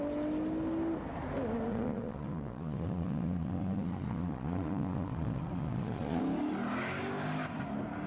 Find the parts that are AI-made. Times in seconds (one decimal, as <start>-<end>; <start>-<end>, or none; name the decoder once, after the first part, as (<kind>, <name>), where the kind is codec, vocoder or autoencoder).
1.7-6.2 (vocoder, Vocos)